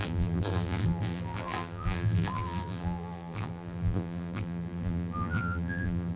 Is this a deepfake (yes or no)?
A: yes